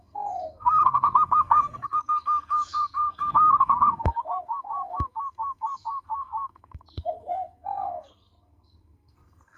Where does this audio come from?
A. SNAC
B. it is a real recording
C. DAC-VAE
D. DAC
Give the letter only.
A